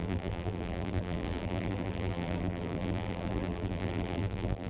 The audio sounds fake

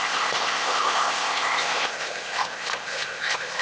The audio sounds fake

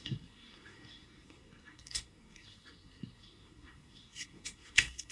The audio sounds fake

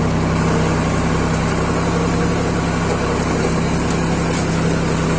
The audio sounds real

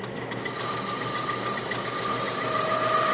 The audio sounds real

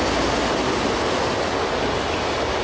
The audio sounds real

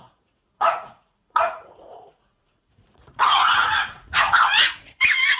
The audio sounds fake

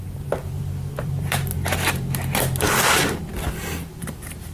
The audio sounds fake